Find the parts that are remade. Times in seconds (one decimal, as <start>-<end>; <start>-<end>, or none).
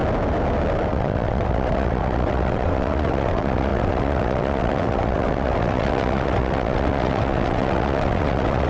0.9-8.7